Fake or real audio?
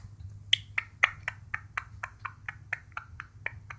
real